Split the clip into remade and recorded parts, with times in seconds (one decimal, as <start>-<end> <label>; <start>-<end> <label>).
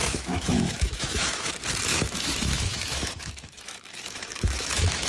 0.0-1.5 remade; 1.5-1.9 recorded; 1.9-5.1 remade